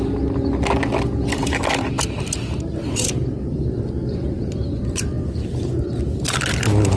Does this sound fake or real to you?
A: real